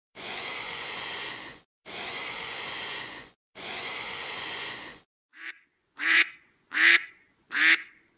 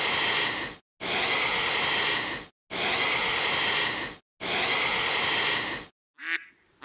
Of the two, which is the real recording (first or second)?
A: second